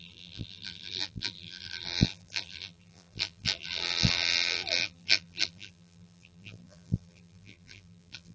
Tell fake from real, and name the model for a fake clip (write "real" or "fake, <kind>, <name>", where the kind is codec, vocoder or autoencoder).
fake, vocoder, BigVGAN v2